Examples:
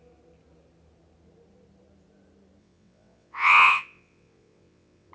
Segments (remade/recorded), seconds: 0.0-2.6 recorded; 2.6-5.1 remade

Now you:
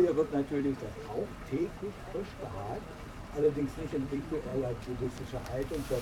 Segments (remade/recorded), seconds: 0.0-6.0 remade